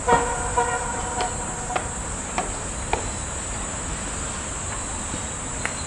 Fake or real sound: real